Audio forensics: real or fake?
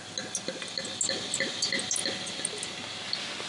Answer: real